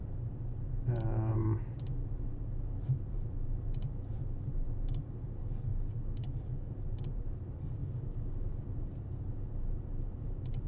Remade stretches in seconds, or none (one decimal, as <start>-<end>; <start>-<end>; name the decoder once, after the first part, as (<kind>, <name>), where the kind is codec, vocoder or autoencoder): 0.0-5.7 (vocoder, BigVGAN v2); 6.7-7.8; 8.5-10.7